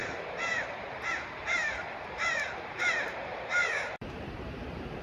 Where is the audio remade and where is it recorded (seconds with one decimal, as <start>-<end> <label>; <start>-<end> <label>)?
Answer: 0.0-5.0 remade